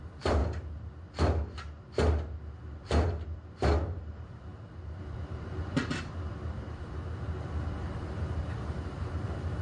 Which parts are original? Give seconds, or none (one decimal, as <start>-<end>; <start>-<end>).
0.4-3.5